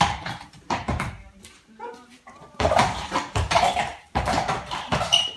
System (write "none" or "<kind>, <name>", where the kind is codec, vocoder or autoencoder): vocoder, BigVGAN v2